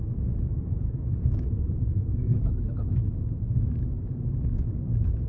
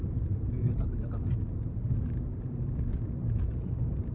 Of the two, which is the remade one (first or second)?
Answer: first